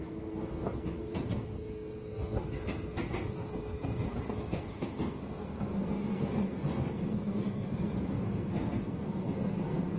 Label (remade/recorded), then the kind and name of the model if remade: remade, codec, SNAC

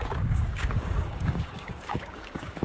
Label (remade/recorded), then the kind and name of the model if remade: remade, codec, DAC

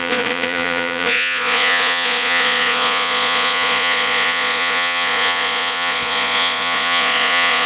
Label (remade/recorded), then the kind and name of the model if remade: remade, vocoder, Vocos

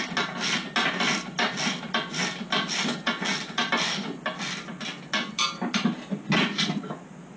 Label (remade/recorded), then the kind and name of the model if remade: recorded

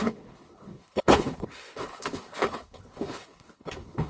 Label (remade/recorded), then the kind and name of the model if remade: remade, codec, HILCodec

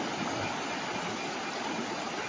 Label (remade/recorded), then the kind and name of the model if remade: recorded